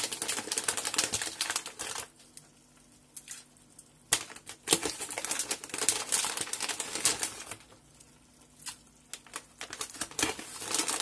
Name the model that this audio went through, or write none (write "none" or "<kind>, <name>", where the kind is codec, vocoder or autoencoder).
none